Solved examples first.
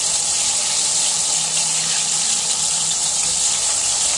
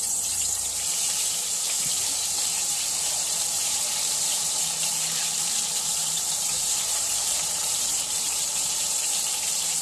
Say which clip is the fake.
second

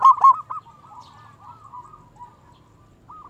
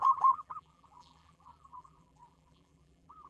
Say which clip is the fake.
second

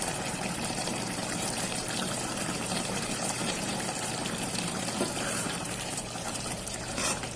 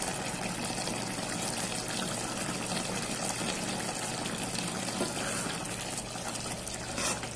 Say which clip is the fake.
first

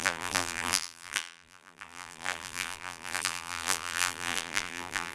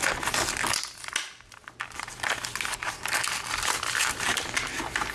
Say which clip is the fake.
first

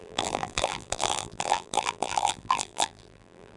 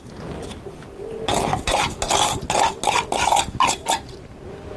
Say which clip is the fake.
first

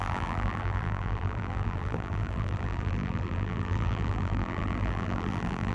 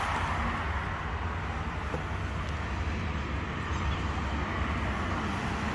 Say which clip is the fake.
first